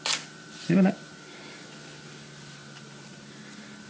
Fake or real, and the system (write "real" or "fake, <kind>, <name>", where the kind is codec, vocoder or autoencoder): real